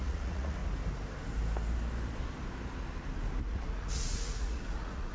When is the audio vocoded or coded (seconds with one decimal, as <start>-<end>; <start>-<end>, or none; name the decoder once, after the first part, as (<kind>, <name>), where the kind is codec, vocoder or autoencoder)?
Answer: 0.0-0.6 (vocoder, Vocos); 3.4-5.1